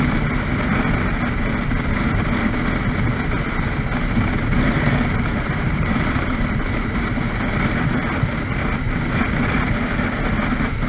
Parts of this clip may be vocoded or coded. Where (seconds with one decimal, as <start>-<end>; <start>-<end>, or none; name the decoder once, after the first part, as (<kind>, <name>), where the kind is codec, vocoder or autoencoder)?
4.9-7.1 (vocoder, BigVGAN v2)